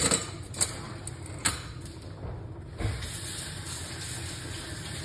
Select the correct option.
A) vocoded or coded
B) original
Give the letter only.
B